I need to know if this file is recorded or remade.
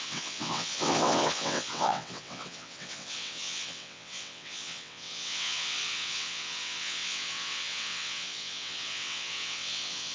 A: remade